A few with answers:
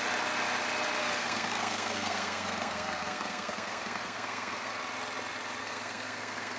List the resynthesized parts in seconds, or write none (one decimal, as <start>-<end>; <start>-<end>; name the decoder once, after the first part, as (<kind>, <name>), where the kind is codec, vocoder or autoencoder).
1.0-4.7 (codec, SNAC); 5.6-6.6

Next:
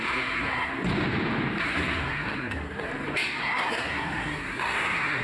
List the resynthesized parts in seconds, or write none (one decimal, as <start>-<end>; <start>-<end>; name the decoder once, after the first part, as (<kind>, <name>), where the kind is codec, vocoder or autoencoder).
0.0-0.7 (codec, SNAC); 1.6-2.9; 3.4-5.2

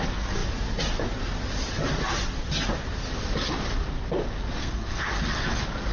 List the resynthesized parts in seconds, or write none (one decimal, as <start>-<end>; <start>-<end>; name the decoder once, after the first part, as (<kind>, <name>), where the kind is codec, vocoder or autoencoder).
4.6-5.1 (codec, SNAC)